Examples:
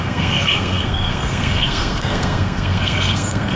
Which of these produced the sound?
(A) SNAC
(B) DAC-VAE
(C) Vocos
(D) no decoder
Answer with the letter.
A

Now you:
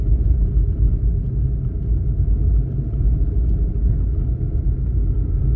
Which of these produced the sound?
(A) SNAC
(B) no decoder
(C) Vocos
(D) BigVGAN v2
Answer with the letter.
B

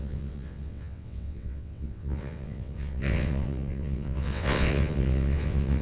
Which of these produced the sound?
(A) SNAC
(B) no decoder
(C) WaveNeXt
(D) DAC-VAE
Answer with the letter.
C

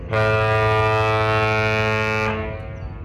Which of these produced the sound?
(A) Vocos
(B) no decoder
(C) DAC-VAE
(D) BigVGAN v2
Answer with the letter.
B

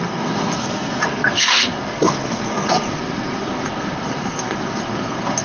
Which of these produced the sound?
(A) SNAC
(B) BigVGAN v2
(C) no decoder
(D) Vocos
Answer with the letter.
A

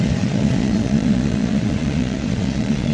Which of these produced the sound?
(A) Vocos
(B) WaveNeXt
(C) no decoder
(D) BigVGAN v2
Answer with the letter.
A